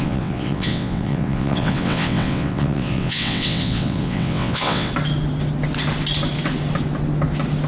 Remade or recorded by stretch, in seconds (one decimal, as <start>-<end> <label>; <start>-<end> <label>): 0.0-4.9 remade; 4.9-7.7 recorded